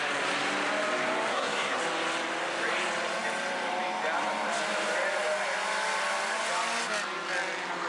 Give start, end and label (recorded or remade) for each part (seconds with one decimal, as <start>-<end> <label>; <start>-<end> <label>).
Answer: 0.0-1.3 recorded; 1.3-1.8 remade; 1.8-7.9 recorded